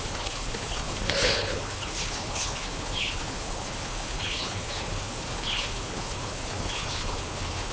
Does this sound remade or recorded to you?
remade